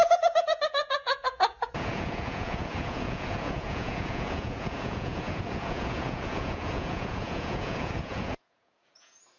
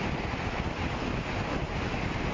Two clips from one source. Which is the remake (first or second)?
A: first